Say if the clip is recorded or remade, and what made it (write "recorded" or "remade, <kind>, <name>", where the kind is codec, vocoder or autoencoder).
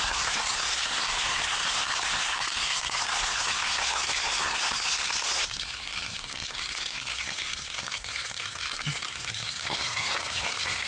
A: remade, codec, SNAC